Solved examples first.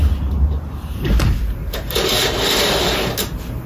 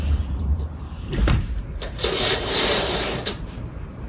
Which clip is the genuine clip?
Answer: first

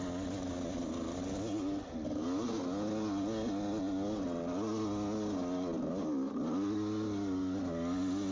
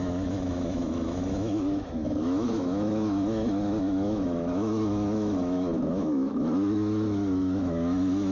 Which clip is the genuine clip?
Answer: first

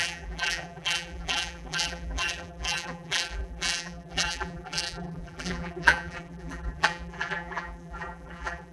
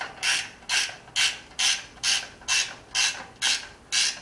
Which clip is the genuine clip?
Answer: second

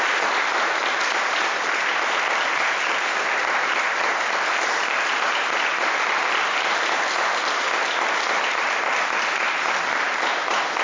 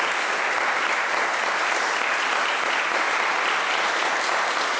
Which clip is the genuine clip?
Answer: second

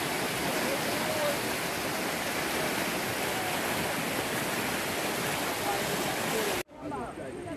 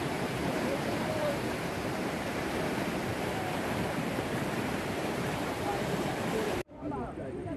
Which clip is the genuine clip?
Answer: first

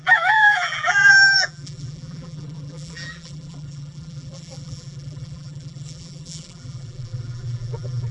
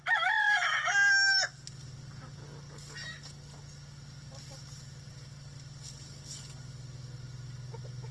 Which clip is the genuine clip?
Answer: second